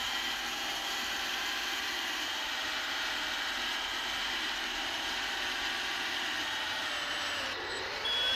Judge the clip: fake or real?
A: fake